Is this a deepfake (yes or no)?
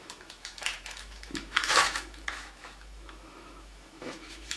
yes